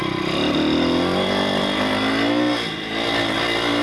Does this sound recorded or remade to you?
recorded